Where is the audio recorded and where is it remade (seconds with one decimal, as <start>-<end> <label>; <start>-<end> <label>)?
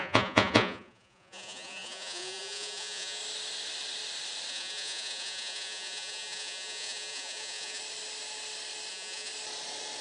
0.0-3.2 remade; 3.2-4.5 recorded; 4.5-7.8 remade; 7.8-8.9 recorded; 8.9-9.3 remade; 9.3-10.0 recorded